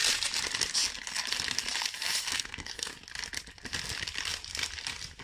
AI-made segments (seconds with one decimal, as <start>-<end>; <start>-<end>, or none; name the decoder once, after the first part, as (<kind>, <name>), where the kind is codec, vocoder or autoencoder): 2.2-2.9 (codec, SNAC)